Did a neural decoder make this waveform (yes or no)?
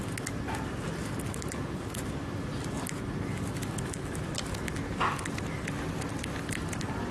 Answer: no